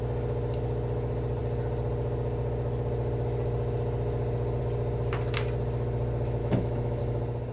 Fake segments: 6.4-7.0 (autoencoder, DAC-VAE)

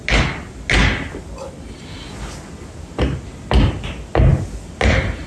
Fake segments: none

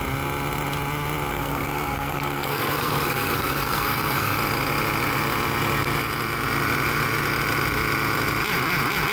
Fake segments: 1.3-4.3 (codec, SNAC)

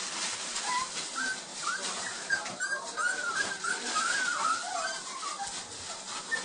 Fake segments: 1.5-4.7 (vocoder, BigVGAN v2)

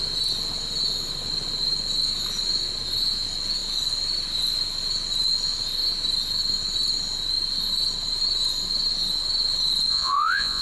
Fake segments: 9.9-10.6 (vocoder, Vocos)

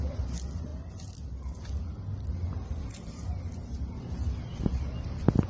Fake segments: none